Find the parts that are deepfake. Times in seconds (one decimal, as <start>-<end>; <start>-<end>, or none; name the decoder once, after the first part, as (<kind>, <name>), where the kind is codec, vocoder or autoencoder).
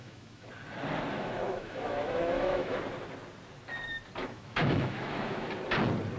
0.0-0.5 (autoencoder, DAC-VAE); 1.1-2.8; 4.2-5.5